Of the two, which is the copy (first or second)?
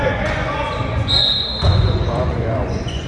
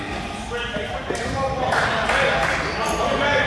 first